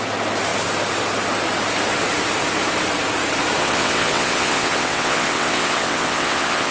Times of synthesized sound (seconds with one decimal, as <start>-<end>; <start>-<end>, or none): 3.6-6.7